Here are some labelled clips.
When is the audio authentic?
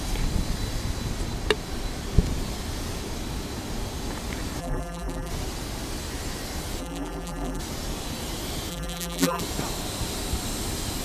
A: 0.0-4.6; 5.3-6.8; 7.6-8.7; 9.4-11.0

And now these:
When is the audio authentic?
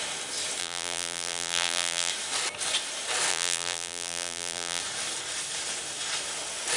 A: 0.0-0.6; 2.1-3.3; 4.8-6.8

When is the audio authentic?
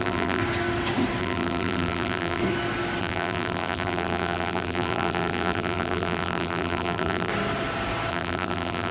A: 0.4-1.2; 2.4-3.0; 7.3-8.1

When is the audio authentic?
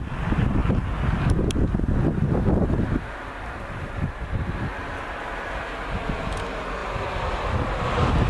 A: 0.0-8.3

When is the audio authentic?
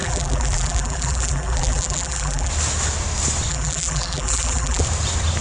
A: 2.5-3.5; 4.8-5.4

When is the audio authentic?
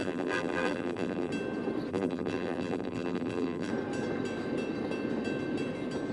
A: 1.3-1.9; 3.7-6.1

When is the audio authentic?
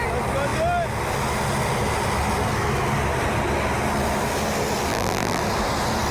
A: 0.0-4.9; 5.4-6.1